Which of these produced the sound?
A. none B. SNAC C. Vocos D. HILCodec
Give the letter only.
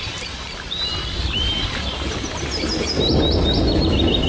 A